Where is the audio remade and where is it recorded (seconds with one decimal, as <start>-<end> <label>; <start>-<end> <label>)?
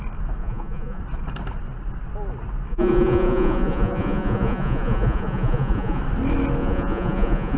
0.0-0.4 recorded; 0.4-1.0 remade; 1.0-2.7 recorded; 2.7-6.0 remade; 6.0-6.6 recorded; 6.6-7.6 remade